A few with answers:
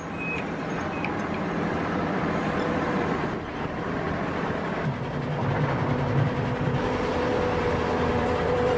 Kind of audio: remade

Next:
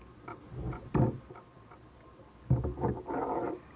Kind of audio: recorded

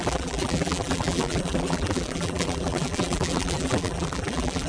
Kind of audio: remade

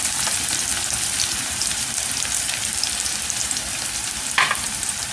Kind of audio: remade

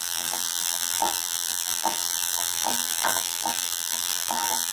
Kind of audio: remade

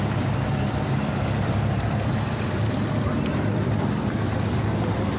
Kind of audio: remade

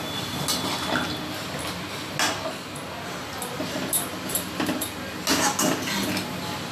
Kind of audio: recorded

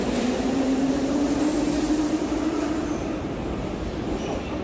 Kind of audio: recorded